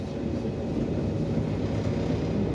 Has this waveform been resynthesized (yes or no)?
no